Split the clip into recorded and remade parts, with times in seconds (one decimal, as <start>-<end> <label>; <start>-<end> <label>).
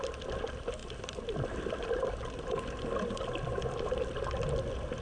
0.0-5.0 recorded